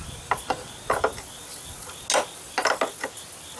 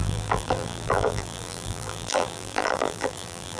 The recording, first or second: first